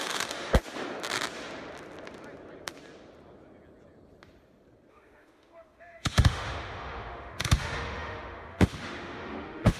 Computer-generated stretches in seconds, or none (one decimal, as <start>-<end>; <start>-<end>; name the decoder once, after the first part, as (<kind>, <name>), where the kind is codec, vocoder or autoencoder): 0.0-0.5 (autoencoder, DAC-VAE); 4.9-9.8